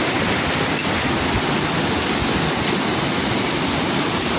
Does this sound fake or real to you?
real